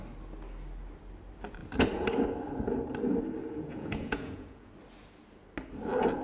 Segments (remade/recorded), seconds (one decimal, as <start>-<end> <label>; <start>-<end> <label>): 0.0-3.4 recorded; 3.4-4.7 remade; 4.7-6.2 recorded